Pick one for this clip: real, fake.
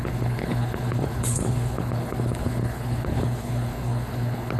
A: fake